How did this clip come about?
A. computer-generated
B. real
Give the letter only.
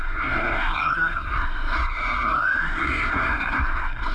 A